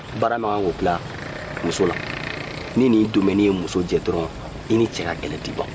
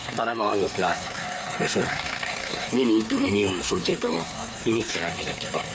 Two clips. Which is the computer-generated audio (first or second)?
second